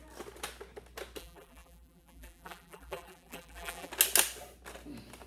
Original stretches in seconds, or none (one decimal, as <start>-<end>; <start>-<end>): 0.0-1.2; 3.9-5.3